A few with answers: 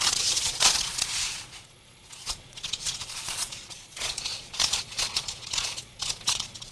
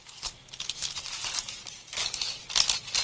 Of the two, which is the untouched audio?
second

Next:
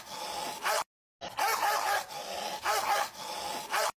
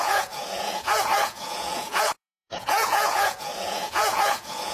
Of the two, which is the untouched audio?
first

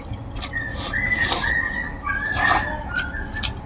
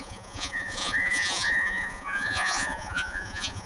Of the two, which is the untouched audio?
first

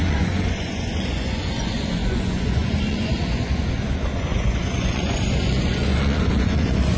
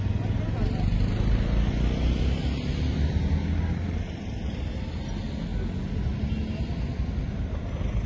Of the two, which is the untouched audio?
second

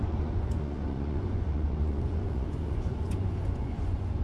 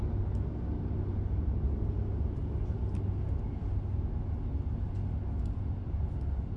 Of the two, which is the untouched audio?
second